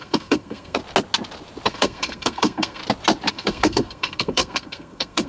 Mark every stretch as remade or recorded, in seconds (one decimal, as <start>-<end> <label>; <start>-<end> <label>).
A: 0.0-0.8 remade; 0.8-1.7 recorded; 1.7-2.8 remade; 2.8-3.3 recorded; 3.3-5.3 remade